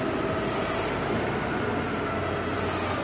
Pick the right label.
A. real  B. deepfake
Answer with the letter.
A